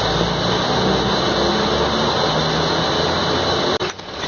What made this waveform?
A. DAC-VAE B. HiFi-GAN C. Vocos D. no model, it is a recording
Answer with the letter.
D